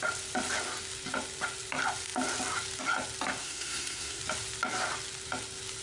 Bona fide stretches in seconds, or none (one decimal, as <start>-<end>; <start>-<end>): 0.0-3.4; 4.2-5.8